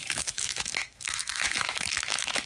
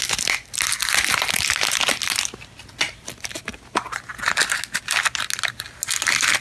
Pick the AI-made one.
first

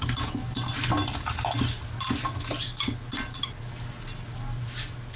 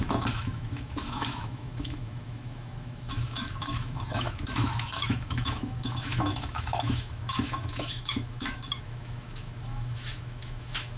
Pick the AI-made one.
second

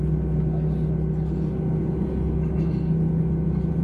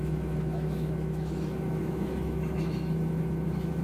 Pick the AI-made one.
second